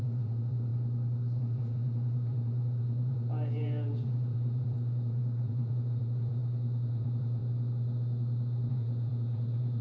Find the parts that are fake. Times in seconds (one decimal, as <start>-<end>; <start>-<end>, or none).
0.0-0.7; 1.4-6.4; 6.9-7.4; 8.7-9.8